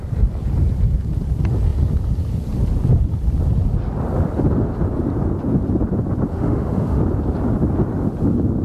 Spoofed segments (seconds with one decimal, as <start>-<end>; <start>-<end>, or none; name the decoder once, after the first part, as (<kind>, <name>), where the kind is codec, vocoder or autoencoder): 6.3-7.0 (autoencoder, DAC-VAE)